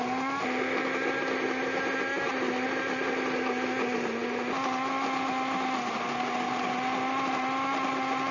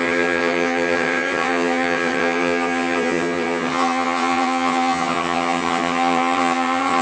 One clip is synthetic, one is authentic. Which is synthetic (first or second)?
second